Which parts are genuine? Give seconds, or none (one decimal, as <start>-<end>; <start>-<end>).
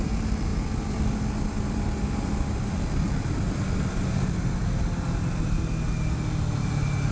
4.6-5.4